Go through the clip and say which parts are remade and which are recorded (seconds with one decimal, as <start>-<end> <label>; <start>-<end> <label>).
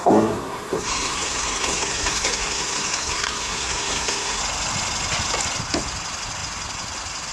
0.0-4.4 remade; 4.4-7.3 recorded